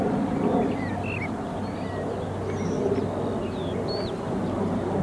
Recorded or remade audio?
recorded